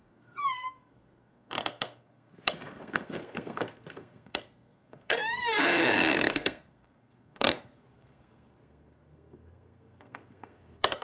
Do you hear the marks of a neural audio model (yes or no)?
yes